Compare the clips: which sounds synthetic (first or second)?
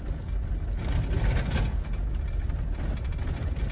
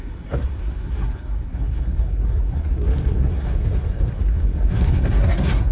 second